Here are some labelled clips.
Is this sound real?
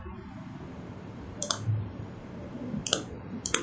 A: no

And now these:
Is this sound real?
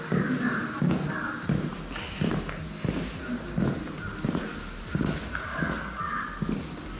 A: yes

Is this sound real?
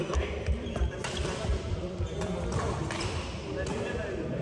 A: no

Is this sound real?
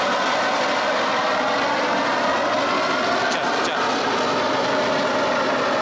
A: yes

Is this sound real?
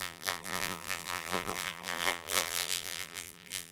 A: no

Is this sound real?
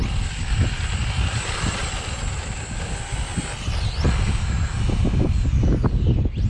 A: yes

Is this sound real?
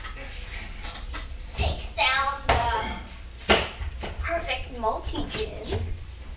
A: no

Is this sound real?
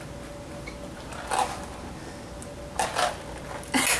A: yes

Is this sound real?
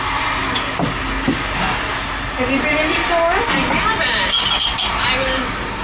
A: yes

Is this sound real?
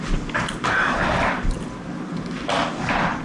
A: yes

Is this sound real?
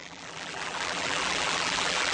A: no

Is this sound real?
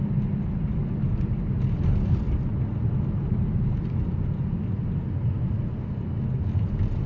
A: yes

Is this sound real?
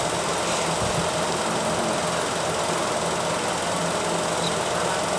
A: yes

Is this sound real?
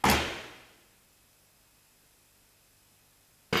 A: yes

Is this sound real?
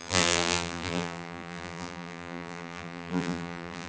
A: no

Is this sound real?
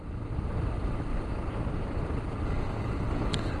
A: yes